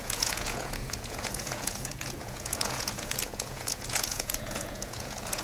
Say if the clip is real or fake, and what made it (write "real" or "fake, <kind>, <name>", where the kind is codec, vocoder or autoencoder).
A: fake, vocoder, Vocos